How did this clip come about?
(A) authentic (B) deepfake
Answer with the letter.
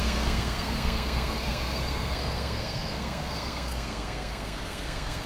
B